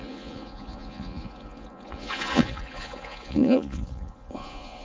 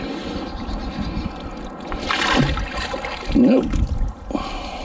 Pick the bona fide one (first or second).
second